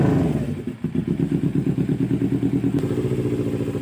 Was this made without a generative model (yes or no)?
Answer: yes